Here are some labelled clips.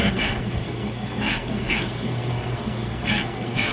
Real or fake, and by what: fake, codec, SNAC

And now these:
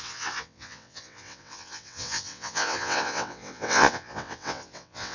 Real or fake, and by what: fake, vocoder, WaveNeXt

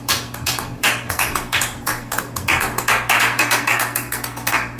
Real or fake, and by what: fake, codec, SNAC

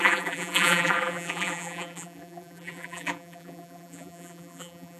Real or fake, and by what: fake, vocoder, BigVGAN v2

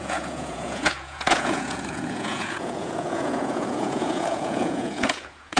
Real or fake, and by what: fake, vocoder, Vocos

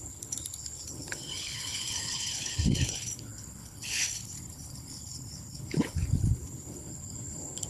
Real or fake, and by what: fake, codec, HILCodec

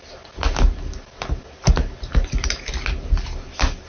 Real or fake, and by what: real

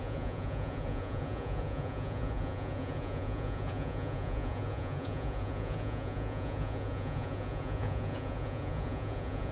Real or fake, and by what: fake, vocoder, Vocos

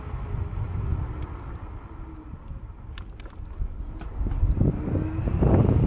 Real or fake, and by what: real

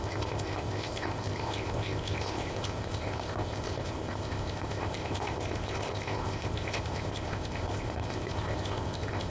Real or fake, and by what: fake, codec, ZipCodec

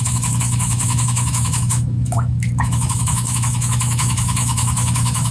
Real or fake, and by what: fake, autoencoder, DAC-VAE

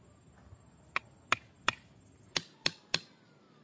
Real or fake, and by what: real